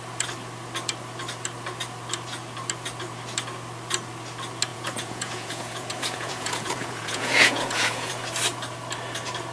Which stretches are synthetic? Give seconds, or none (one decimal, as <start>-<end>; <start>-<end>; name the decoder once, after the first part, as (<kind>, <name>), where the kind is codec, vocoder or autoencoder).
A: 4.7-8.1 (vocoder, Vocos)